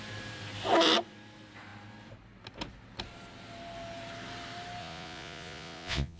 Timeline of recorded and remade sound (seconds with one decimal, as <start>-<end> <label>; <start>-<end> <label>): 0.0-4.8 recorded; 4.8-6.2 remade